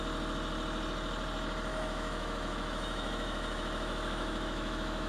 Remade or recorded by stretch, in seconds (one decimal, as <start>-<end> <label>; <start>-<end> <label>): 0.0-1.7 recorded; 1.7-5.1 remade